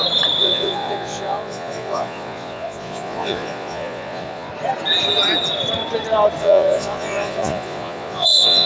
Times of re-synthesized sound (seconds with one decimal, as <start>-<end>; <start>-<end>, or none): 0.4-4.5; 6.4-8.7